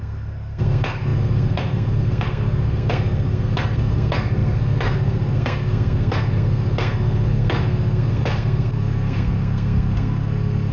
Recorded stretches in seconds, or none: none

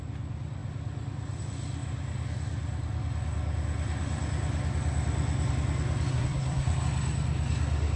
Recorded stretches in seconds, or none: 0.0-6.1; 6.8-8.0

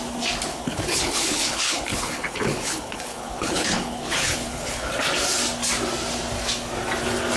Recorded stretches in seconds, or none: 0.0-0.5; 4.9-7.4

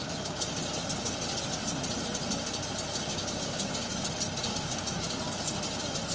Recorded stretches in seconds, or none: 0.0-3.1; 4.0-4.5; 5.2-6.1

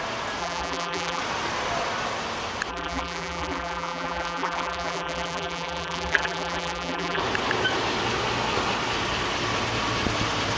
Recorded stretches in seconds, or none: 0.0-0.4; 1.2-2.7; 7.2-10.6

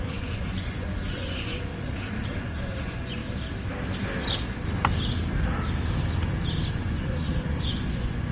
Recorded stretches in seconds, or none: 1.7-2.4; 3.2-6.7

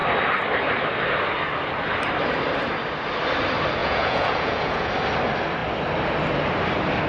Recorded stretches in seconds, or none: 0.0-3.8; 4.9-7.1

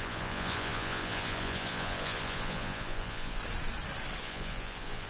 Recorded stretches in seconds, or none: 3.4-4.2